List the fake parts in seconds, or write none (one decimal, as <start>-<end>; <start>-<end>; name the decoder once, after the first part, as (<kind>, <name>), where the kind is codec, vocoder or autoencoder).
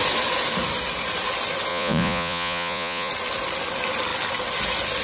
1.7-3.1 (vocoder, Vocos)